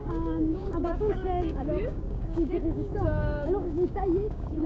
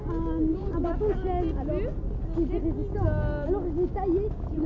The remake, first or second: first